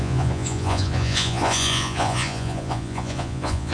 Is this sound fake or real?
fake